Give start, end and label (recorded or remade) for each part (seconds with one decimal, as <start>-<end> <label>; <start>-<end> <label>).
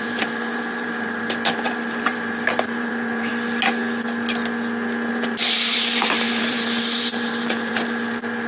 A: 0.0-3.3 remade; 3.3-5.1 recorded; 5.1-8.5 remade